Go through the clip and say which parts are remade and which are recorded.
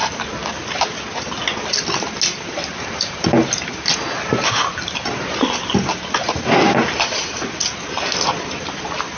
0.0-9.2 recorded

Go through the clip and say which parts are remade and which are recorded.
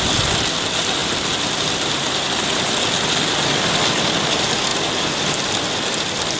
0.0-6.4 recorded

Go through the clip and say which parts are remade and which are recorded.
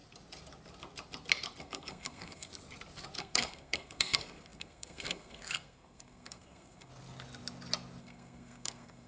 0.0-1.6 recorded; 1.6-2.5 remade; 2.5-3.2 recorded; 3.2-6.9 remade; 6.9-8.0 recorded; 8.0-9.1 remade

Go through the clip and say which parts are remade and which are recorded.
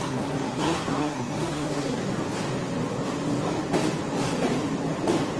0.0-2.0 remade; 2.0-5.4 recorded